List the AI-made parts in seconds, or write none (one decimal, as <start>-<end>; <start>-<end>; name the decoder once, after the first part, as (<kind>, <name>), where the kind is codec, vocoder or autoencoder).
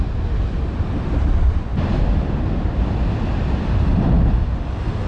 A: none